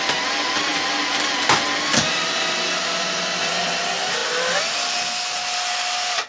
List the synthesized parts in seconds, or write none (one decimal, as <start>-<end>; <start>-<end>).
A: none